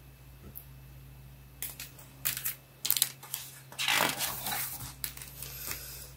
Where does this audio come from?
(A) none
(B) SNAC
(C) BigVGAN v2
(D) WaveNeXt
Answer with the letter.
A